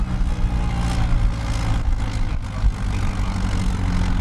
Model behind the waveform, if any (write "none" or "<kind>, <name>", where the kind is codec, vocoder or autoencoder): none